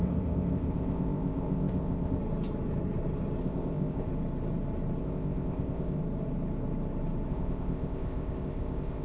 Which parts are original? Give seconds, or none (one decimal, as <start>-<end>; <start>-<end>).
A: 2.2-3.4; 4.1-5.0; 6.0-7.3